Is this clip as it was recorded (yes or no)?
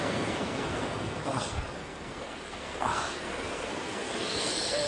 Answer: no